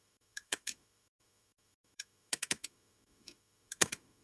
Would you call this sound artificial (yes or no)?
yes